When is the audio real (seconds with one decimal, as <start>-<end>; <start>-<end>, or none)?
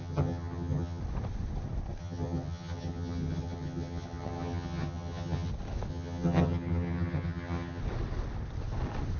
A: 1.0-2.0; 5.5-5.9; 7.8-9.2